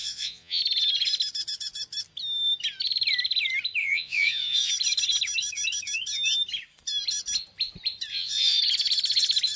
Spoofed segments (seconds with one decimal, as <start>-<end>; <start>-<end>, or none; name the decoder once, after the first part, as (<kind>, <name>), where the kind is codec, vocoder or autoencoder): 0.0-0.6 (vocoder, Vocos); 3.8-4.7; 8.1-8.6